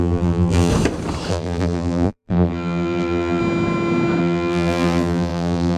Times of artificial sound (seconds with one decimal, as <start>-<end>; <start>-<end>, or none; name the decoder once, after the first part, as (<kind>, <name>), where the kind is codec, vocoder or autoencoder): 0.0-0.7 (vocoder, BigVGAN v2); 1.3-3.4; 4.2-5.8

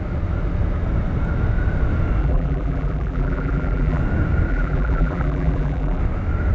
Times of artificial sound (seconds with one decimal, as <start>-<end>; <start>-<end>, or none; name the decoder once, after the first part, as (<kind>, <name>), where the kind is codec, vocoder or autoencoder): 2.2-4.0 (vocoder, BigVGAN v2); 4.5-6.0

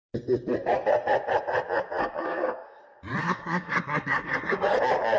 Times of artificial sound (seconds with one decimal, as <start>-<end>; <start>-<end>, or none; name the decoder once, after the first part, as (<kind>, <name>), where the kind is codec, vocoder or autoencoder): 2.0-2.8 (codec, SNAC); 3.2-4.8

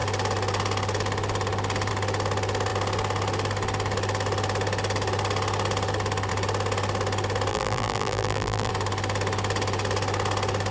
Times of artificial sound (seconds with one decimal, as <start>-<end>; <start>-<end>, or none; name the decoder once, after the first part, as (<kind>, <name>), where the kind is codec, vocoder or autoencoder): 7.5-8.7 (vocoder, BigVGAN v2)

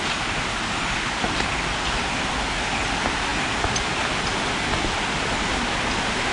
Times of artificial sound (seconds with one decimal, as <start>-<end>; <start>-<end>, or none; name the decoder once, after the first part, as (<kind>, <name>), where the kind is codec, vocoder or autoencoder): none

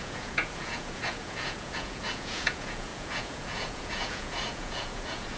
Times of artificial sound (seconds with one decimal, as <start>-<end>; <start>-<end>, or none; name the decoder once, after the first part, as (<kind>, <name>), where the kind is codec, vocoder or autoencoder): 0.0-5.4 (vocoder, Vocos)

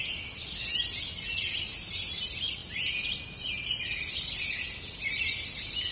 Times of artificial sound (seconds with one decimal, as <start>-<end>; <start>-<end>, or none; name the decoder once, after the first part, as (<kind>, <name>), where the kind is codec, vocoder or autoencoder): none

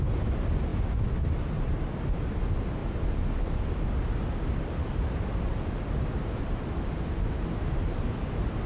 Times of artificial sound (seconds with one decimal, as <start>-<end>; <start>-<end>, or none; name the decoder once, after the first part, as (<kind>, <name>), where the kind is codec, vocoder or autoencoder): none